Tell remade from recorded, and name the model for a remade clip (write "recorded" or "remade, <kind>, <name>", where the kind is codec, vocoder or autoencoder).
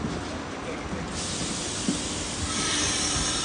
recorded